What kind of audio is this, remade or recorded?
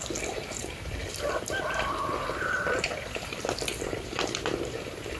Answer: recorded